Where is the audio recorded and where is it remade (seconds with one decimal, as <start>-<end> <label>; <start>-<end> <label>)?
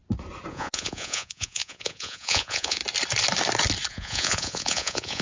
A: 0.0-0.5 recorded; 0.5-2.8 remade; 2.8-3.9 recorded; 3.9-5.2 remade